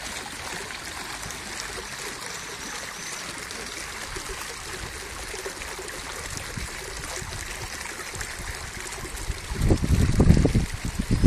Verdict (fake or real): real